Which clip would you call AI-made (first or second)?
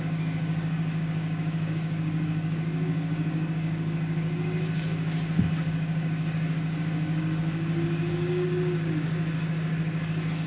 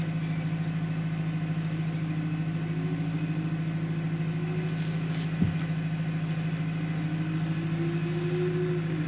first